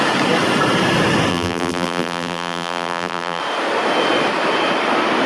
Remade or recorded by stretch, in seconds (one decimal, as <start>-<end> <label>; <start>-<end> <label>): 0.0-1.3 recorded; 1.3-3.4 remade; 3.4-5.3 recorded